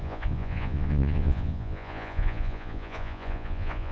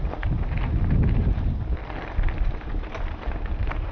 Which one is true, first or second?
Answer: second